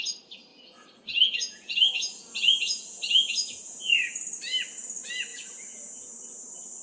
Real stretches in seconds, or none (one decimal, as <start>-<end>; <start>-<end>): 0.0-0.5; 3.9-5.3; 6.1-6.8